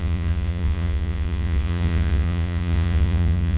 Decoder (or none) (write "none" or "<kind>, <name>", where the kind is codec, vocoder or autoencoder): vocoder, Vocos